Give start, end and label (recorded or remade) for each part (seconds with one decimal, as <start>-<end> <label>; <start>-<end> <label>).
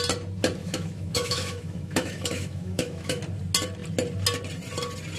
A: 0.0-0.6 recorded; 0.6-3.2 remade; 3.2-5.2 recorded